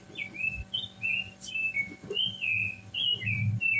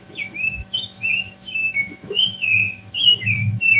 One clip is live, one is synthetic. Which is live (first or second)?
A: first